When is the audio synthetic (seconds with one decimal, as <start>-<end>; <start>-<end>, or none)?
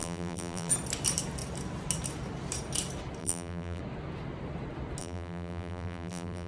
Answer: 0.0-0.7; 3.2-3.8; 5.0-6.5